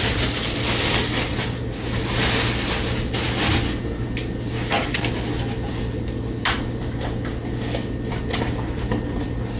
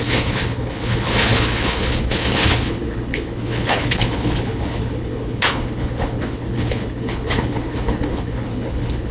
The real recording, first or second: first